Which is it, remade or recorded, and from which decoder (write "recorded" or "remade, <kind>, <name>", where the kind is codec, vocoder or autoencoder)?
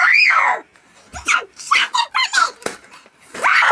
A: remade, vocoder, BigVGAN v2